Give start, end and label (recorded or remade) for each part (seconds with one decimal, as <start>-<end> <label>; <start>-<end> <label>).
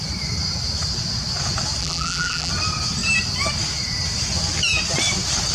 0.0-1.8 recorded; 1.8-2.5 remade; 2.5-5.5 recorded